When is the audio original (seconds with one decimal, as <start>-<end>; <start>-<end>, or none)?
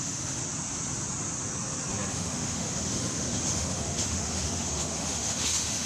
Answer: 0.4-2.1